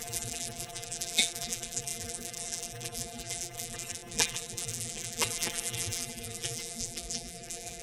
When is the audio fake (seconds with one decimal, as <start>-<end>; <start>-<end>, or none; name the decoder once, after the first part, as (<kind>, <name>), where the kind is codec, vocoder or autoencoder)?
0.0-7.8 (vocoder, BigVGAN v2)